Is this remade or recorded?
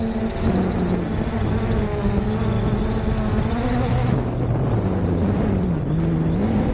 recorded